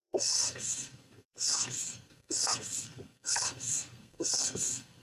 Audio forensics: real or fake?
fake